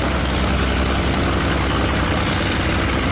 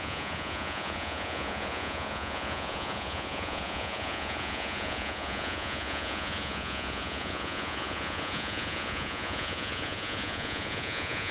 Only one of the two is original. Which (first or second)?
first